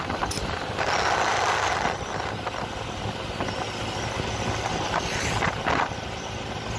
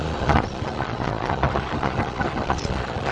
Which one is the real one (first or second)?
first